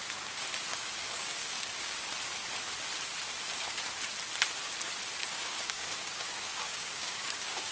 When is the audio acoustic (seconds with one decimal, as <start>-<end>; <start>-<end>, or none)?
0.0-0.7; 2.1-5.2